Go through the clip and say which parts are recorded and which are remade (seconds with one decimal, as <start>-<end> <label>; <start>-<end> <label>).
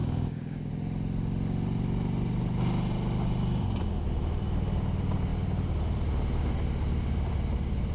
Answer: 0.0-0.7 remade; 0.7-7.9 recorded